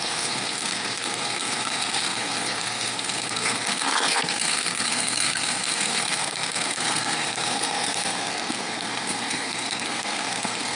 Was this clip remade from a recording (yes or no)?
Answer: yes